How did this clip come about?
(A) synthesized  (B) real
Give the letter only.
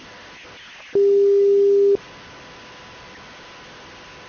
B